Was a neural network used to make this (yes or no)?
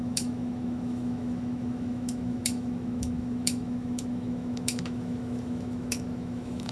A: yes